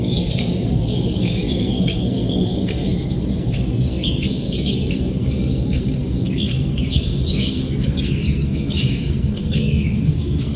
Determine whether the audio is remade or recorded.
remade